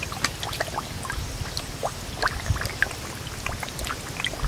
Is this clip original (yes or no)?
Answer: yes